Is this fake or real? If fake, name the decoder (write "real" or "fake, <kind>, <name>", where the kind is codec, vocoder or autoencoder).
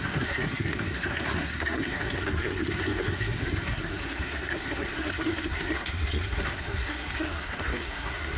fake, codec, SNAC